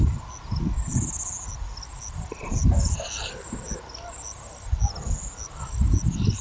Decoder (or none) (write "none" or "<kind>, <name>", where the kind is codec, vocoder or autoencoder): none